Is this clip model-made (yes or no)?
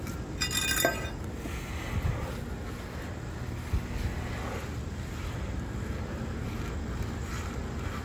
no